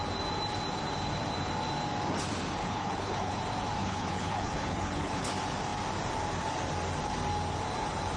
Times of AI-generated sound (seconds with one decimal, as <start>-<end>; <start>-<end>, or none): 2.6-3.4; 3.8-5.3